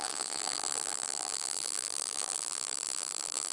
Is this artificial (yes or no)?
yes